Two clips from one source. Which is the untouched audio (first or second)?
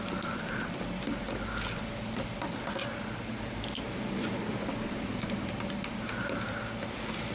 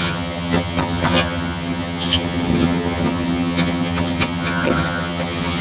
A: first